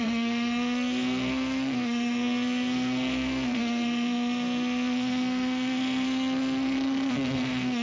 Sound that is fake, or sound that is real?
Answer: fake